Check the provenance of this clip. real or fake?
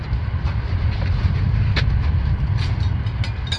real